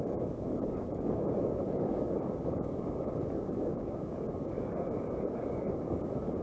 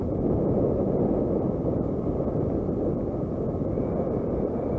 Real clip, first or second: second